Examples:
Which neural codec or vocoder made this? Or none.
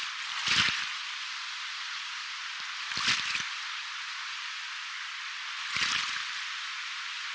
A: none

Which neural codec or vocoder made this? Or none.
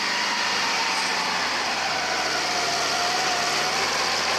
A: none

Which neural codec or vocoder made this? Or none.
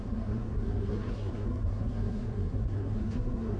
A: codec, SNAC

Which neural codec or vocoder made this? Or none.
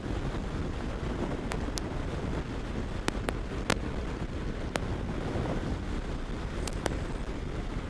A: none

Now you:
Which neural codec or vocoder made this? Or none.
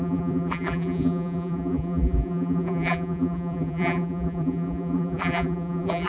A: vocoder, BigVGAN v2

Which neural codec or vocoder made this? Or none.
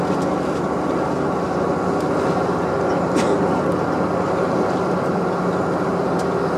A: none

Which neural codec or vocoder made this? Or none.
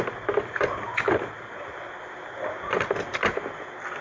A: none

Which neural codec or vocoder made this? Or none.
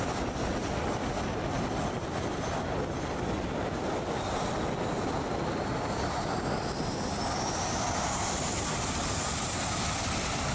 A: none